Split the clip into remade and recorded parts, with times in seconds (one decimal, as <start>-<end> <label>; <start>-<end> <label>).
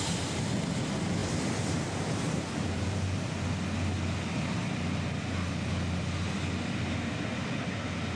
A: 0.0-1.2 recorded; 1.2-3.3 remade; 3.3-8.2 recorded